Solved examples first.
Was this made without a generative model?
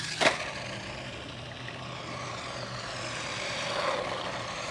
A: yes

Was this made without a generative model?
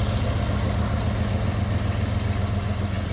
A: yes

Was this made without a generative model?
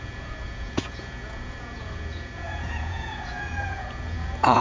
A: no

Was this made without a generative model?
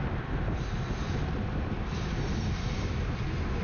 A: yes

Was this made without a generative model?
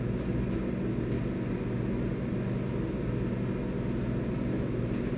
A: yes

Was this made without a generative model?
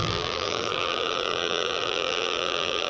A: no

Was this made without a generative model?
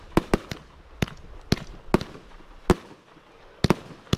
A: yes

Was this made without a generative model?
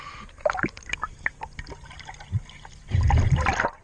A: yes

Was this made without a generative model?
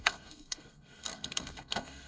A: no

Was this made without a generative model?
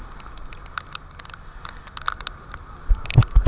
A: yes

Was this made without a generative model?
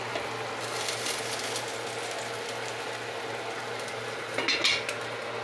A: yes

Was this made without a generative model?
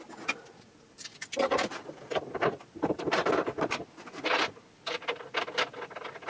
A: yes